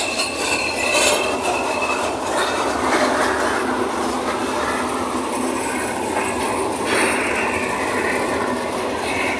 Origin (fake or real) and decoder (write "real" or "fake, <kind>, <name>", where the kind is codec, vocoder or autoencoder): real